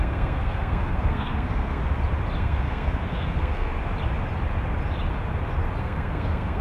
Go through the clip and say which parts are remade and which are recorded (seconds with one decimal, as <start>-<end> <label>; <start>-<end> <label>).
0.0-1.8 remade; 1.8-2.4 recorded; 2.4-3.7 remade; 3.7-5.8 recorded; 5.8-6.6 remade